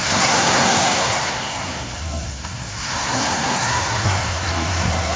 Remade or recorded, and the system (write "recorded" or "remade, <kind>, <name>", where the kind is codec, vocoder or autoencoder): remade, codec, SNAC